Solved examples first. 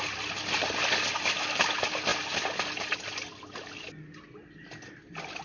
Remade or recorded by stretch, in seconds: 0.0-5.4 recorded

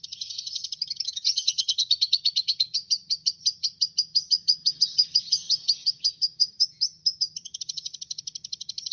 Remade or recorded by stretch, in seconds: 0.0-8.9 remade

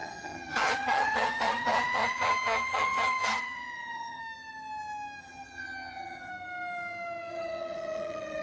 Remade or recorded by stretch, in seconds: 0.0-4.2 remade; 4.2-5.2 recorded; 5.2-6.3 remade; 6.3-7.3 recorded; 7.3-8.4 remade

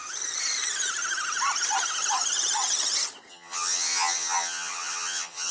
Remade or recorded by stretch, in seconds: 0.0-3.3 recorded; 3.3-5.5 remade

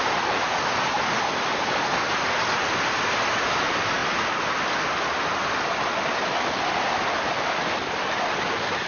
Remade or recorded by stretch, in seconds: 0.0-8.9 recorded

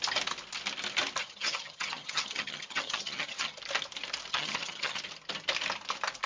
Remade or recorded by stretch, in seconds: 0.0-1.2 recorded; 1.2-3.6 remade; 3.6-4.3 recorded; 4.3-5.0 remade; 5.0-6.3 recorded